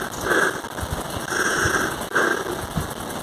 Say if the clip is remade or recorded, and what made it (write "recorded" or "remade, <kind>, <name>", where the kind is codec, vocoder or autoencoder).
recorded